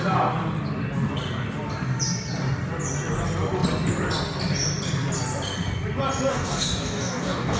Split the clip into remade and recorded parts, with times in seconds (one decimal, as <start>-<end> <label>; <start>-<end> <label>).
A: 0.0-6.3 recorded; 6.3-7.6 remade